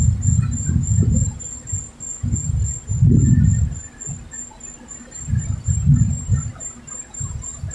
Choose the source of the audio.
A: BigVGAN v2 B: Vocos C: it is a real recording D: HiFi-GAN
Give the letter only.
C